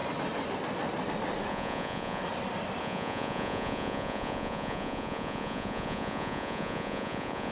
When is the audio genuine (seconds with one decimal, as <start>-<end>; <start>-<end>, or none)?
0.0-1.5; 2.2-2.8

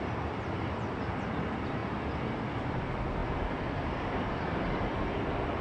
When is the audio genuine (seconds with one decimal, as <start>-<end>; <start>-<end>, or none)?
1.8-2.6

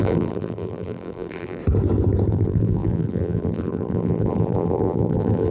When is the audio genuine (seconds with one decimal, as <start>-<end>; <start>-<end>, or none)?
1.6-2.3

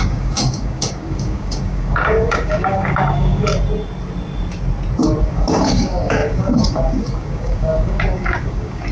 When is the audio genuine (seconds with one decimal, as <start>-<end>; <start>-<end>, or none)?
3.5-5.2

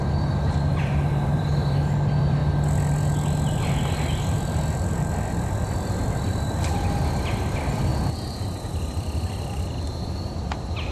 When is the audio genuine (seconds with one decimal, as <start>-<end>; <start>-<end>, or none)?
2.4-7.5; 7.9-8.7

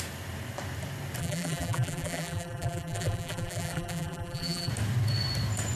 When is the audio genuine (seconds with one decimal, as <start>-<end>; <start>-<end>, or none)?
0.0-1.2; 4.7-5.8